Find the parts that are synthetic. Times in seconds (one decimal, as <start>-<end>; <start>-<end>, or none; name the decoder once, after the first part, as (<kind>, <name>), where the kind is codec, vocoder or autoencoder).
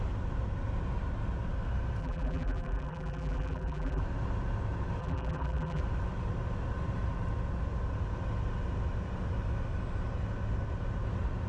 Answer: 2.0-4.0 (vocoder, BigVGAN v2); 5.0-5.8